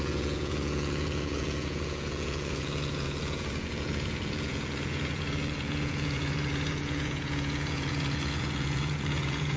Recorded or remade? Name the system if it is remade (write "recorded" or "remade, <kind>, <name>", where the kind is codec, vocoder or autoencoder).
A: remade, vocoder, Vocos